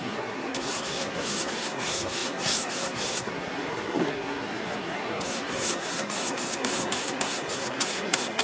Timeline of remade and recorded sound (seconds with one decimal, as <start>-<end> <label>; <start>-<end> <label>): 0.0-8.4 remade